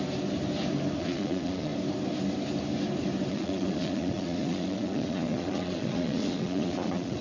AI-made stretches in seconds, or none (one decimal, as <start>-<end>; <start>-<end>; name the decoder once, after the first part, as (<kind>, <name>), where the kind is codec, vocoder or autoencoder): 1.0-1.7 (vocoder, Vocos); 3.3-7.2